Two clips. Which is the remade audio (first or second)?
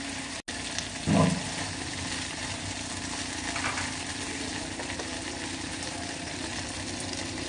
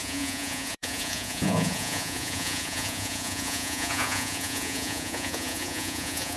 second